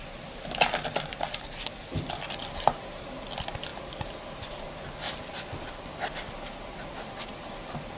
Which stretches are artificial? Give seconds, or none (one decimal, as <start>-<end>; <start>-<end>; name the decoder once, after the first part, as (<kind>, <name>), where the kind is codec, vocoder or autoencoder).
none